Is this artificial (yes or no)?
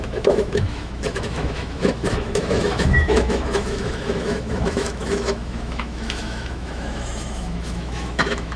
yes